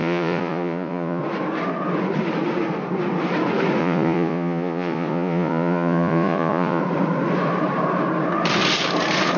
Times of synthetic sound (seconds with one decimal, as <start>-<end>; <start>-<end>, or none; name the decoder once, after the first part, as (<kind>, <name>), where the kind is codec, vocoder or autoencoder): 0.0-1.2 (vocoder, Vocos); 3.8-6.8